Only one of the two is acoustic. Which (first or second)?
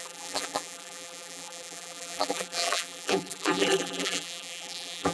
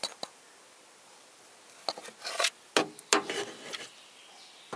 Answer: second